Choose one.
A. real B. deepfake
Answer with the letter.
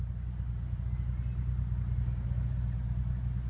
A